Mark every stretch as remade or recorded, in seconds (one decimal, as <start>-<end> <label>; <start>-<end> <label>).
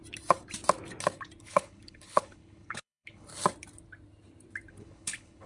0.0-1.4 recorded; 1.4-3.3 remade; 3.3-4.7 recorded; 4.7-5.5 remade